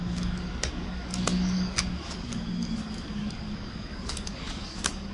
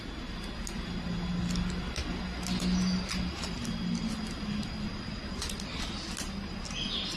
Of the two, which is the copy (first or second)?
first